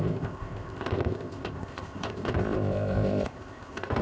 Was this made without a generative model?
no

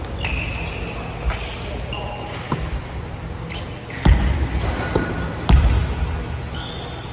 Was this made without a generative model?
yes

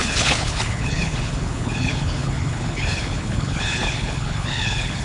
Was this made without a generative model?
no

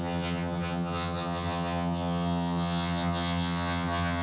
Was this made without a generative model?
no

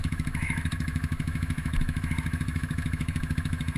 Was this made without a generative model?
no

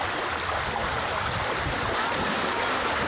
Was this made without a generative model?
yes